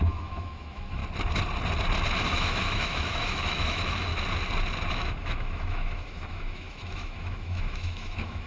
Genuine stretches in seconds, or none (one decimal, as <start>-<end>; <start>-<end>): 1.0-2.3; 4.1-4.9